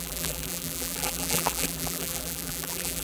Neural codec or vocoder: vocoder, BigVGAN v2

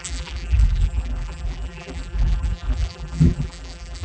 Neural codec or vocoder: vocoder, BigVGAN v2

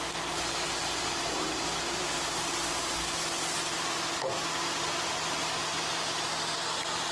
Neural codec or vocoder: none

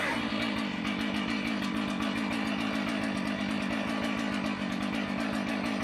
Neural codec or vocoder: none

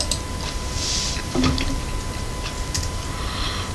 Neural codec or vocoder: none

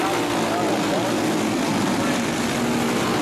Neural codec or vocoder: none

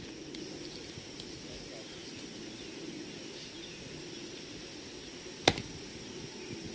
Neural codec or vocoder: none